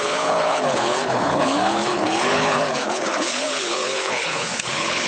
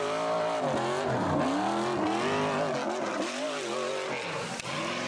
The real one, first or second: second